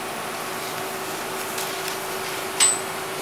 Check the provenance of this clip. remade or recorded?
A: recorded